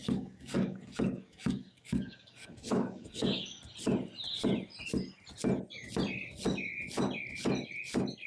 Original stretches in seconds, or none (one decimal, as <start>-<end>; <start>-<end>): 3.6-8.3